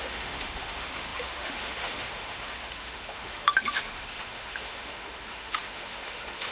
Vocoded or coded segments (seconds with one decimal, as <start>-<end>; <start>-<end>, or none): 0.0-6.5